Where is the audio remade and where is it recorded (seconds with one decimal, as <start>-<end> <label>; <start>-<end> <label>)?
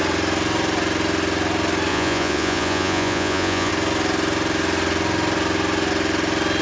0.0-1.9 recorded; 1.9-3.7 remade; 3.7-6.6 recorded